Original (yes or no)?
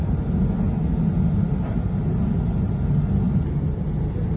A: yes